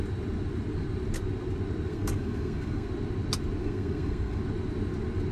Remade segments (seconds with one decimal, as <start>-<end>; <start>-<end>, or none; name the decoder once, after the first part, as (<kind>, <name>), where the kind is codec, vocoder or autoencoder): 1.9-2.9 (codec, SNAC); 3.6-4.4